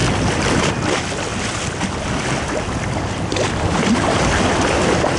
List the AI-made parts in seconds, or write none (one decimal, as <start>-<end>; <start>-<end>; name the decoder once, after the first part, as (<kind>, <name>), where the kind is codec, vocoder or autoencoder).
1.3-4.4 (vocoder, BigVGAN v2)

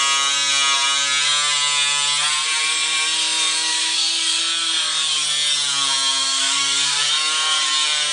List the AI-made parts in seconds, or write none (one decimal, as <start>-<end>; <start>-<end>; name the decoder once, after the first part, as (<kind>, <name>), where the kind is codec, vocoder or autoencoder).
3.7-4.4 (codec, DAC); 6.2-7.0